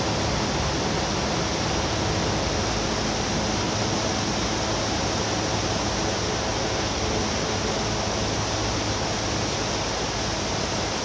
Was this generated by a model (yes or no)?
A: no